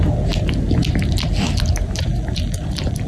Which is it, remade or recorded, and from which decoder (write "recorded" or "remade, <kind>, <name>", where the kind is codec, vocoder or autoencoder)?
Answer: recorded